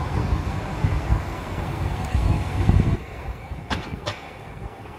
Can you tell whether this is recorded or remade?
remade